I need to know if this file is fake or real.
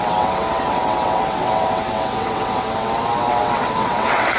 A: fake